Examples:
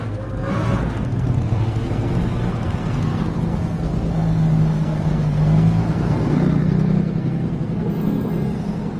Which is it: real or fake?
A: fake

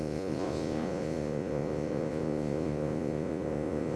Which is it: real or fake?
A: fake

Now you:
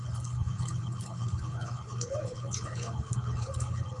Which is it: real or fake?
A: fake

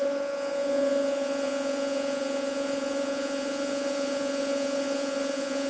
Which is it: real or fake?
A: fake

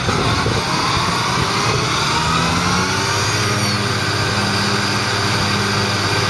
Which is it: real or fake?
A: real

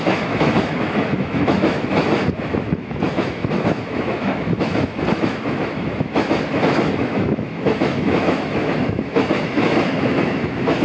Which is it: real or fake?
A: fake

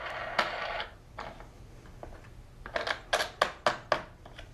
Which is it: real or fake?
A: real